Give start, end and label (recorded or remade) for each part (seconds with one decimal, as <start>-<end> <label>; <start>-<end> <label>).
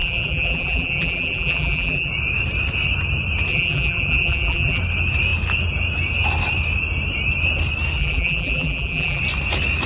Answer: 0.0-2.1 remade; 2.1-3.5 recorded; 3.5-4.8 remade; 4.8-8.0 recorded; 8.0-9.2 remade; 9.2-9.9 recorded